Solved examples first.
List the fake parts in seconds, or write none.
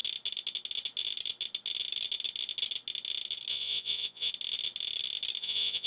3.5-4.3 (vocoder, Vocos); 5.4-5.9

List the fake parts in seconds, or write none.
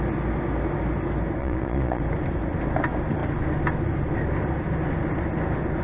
1.4-2.0 (vocoder, Vocos)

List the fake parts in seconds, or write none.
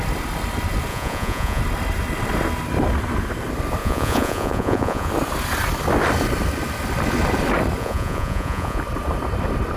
0.9-1.6 (vocoder, Vocos); 3.8-5.1; 7.8-8.8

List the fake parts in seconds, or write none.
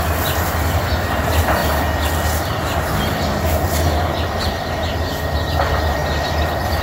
none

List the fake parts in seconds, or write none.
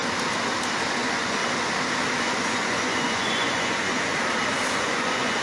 0.9-1.4 (vocoder, Vocos); 2.2-4.1; 4.7-5.4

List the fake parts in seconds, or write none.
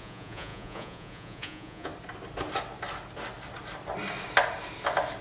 0.0-1.9 (vocoder, Vocos)